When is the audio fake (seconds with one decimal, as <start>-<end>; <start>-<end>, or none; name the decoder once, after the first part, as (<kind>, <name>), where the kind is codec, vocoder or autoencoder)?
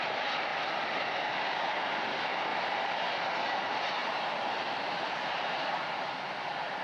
2.5-3.1 (vocoder, BigVGAN v2); 4.0-5.3